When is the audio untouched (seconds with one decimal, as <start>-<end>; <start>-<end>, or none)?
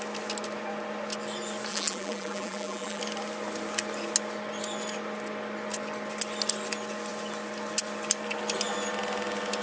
0.0-1.7; 3.0-9.6